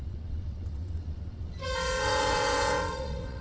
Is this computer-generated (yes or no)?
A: yes